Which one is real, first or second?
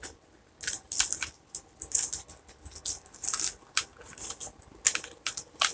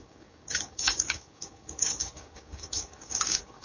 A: first